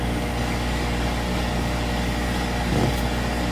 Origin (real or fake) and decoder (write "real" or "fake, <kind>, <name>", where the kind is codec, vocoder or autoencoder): fake, codec, DAC